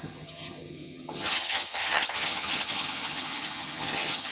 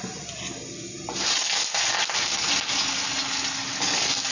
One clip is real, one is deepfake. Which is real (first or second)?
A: second